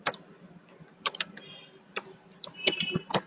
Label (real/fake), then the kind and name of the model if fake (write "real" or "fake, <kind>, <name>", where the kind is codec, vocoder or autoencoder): fake, vocoder, BigVGAN v2